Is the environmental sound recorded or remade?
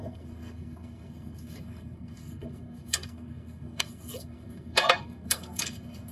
remade